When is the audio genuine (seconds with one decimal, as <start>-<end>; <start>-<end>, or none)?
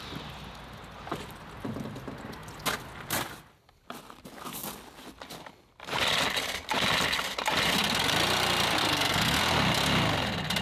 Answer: 0.0-8.8; 9.4-10.6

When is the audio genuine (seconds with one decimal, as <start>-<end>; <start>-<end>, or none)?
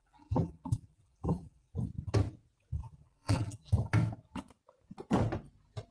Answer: 1.7-2.8; 3.7-5.9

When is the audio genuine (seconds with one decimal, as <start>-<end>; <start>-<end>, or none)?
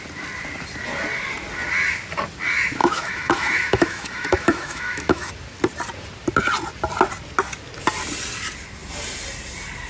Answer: 0.0-2.8; 5.3-9.9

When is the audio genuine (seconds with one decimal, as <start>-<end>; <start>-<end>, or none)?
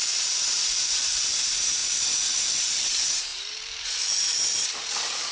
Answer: none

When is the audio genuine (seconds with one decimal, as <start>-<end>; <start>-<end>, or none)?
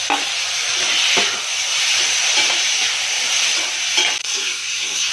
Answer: 0.0-4.2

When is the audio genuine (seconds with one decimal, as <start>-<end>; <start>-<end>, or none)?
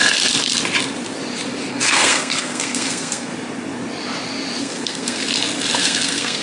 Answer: 0.0-1.7; 3.3-4.6; 5.2-5.8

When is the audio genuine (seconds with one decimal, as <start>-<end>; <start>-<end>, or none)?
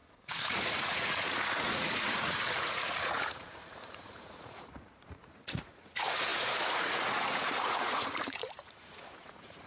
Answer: none